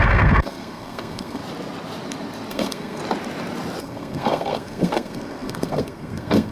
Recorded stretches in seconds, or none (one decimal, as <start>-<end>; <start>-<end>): 1.4-2.5; 3.0-3.8